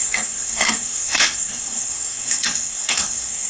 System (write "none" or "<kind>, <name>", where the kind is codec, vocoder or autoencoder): codec, SNAC